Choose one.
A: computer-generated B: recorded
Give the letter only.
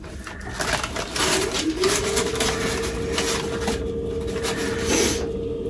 B